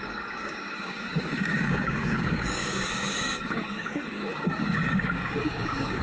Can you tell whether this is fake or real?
fake